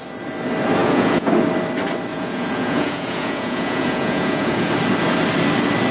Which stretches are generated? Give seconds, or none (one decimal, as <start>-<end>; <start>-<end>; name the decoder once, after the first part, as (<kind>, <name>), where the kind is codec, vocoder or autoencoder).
0.8-1.3 (vocoder, Vocos); 2.1-4.7